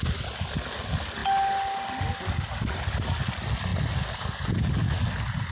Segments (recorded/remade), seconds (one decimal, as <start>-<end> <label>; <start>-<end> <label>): 0.0-5.5 recorded